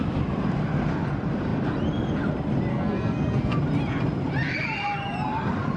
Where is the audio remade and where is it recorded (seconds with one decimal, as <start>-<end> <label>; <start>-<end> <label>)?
0.0-2.7 recorded; 2.7-3.6 remade; 3.6-5.8 recorded